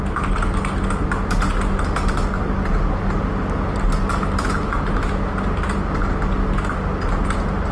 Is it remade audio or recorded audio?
recorded